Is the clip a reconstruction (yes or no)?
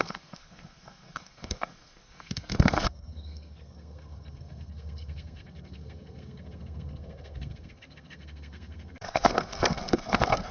yes